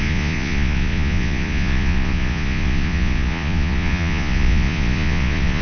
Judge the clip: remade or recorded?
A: remade